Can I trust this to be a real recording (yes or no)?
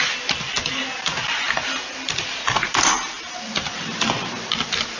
yes